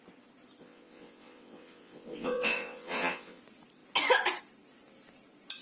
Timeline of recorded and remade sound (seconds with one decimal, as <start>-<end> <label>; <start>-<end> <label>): 0.0-0.6 recorded; 0.6-3.4 remade; 3.4-5.6 recorded